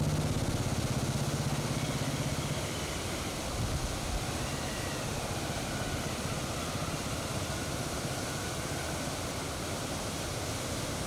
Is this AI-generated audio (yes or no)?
no